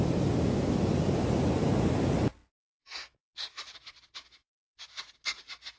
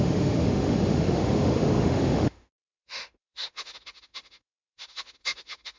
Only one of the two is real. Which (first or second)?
first